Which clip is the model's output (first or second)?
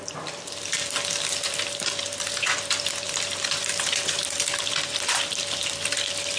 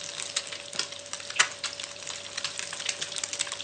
first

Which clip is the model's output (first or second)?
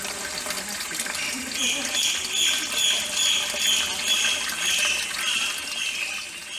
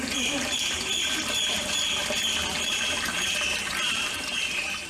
second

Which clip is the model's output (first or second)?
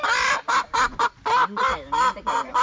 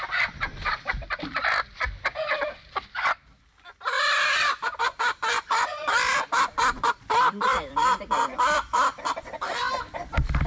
second